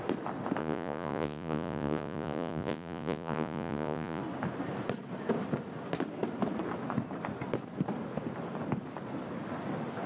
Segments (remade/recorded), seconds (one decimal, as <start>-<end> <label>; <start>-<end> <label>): 0.0-0.6 recorded; 0.6-4.2 remade; 4.2-10.1 recorded